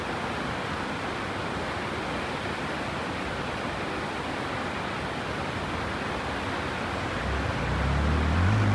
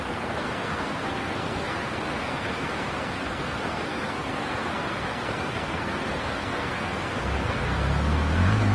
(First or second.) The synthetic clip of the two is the second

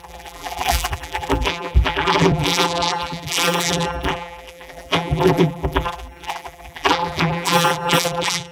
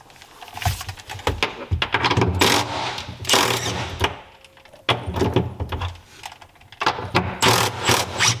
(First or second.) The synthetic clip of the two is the first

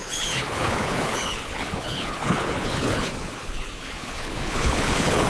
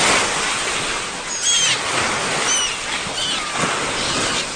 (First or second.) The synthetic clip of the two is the first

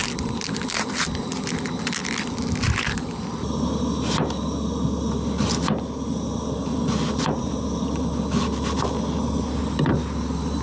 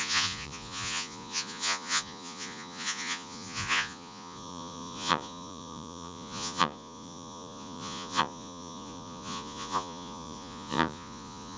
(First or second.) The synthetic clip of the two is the second